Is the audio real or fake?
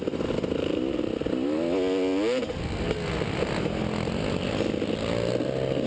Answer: real